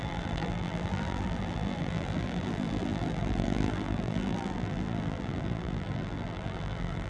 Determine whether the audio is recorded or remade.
remade